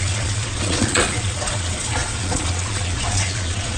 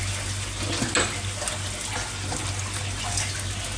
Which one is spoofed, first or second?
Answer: first